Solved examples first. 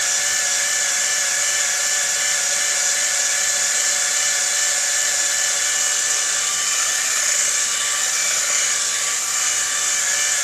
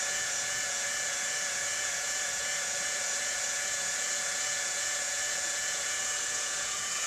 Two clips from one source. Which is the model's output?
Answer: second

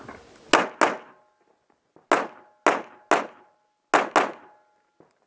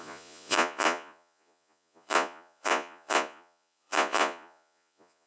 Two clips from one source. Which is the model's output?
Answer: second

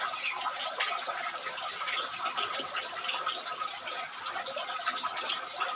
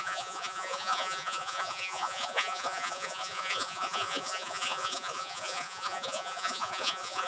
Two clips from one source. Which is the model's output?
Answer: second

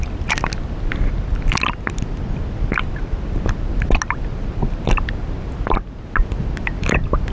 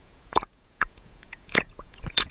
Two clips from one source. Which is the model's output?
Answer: second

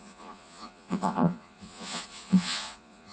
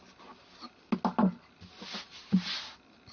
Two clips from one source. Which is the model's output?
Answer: first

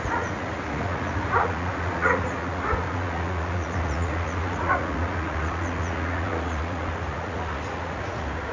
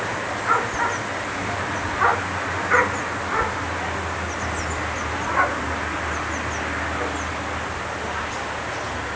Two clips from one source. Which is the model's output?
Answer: first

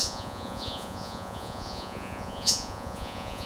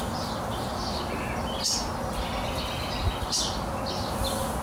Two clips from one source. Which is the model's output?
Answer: first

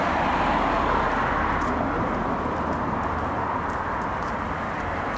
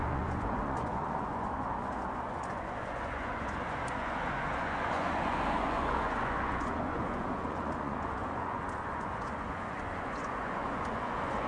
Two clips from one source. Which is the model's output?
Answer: second